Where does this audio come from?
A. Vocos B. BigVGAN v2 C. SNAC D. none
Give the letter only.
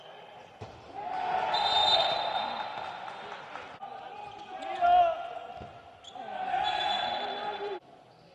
D